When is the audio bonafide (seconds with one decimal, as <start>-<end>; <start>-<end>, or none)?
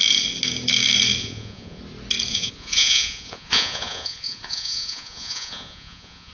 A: 0.0-1.2; 1.8-2.3